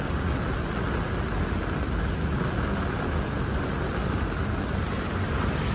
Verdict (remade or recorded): recorded